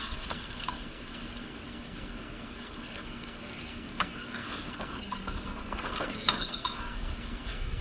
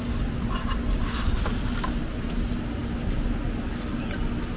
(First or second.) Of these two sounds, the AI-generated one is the first